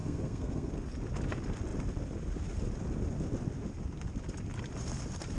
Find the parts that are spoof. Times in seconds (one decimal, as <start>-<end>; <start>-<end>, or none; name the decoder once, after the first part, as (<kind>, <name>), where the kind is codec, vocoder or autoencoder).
0.0-0.7 (codec, SNAC)